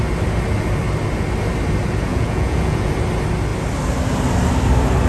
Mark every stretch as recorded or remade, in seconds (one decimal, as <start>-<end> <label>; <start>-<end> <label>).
0.0-2.1 recorded; 2.1-2.9 remade; 2.9-5.1 recorded